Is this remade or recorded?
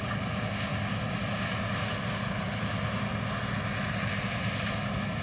recorded